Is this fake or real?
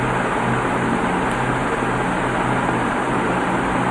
real